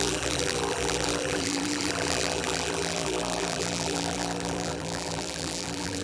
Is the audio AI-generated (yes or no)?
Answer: yes